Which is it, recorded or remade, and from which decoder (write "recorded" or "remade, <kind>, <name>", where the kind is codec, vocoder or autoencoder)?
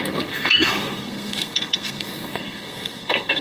remade, codec, SNAC